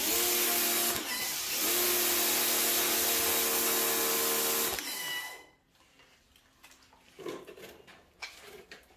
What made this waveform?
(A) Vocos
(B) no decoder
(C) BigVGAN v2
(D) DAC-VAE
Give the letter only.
B